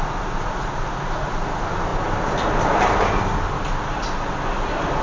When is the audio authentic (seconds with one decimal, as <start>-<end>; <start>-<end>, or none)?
0.0-5.0